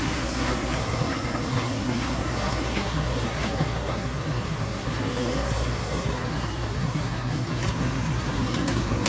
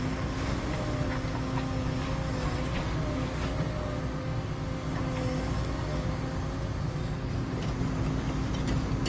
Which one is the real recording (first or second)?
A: second